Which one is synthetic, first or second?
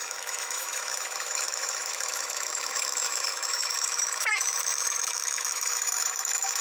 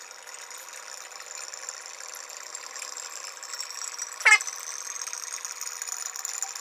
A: first